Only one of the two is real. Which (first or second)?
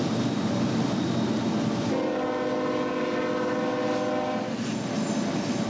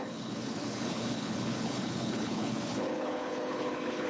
first